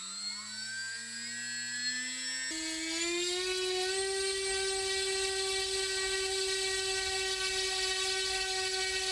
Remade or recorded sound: recorded